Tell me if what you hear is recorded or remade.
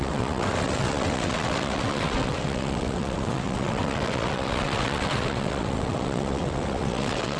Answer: remade